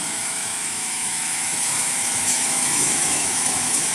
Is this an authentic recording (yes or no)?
no